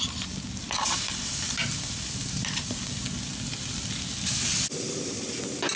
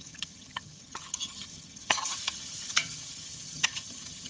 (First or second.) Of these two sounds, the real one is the first